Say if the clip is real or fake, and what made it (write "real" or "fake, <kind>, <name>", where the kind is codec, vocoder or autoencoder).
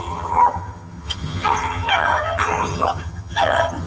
fake, vocoder, HiFi-GAN